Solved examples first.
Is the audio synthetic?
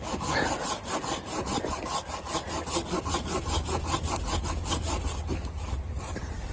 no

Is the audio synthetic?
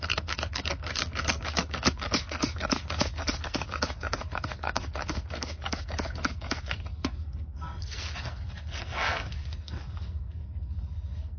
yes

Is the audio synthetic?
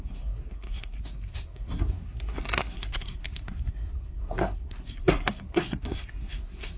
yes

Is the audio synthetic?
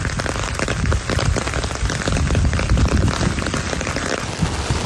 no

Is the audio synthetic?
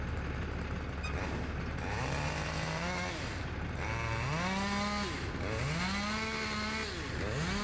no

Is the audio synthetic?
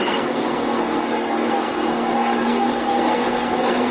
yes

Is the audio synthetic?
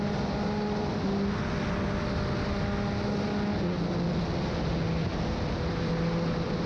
no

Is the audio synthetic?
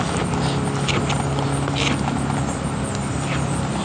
no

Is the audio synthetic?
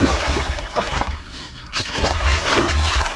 yes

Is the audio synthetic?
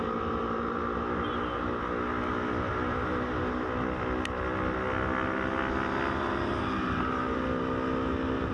no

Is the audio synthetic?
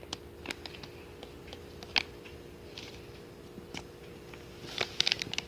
no